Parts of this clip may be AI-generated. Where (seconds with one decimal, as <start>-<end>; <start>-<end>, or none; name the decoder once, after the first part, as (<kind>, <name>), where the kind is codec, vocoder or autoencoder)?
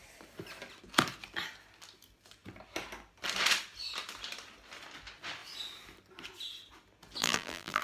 7.2-7.8 (vocoder, BigVGAN v2)